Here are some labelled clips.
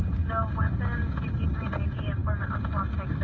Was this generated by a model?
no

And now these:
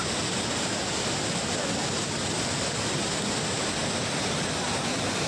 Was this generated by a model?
no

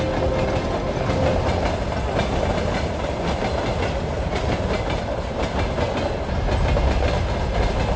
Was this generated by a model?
no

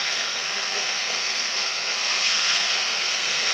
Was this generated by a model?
yes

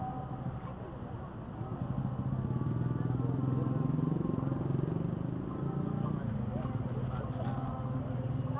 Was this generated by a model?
no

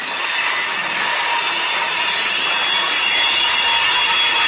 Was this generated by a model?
no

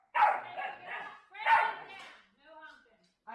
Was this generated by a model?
no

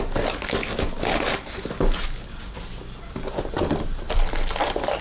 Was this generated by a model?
no